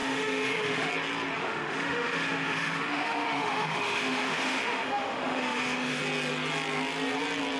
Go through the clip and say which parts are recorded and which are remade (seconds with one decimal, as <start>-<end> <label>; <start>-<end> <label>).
0.0-0.9 remade; 0.9-1.4 recorded; 1.4-6.0 remade; 6.0-7.6 recorded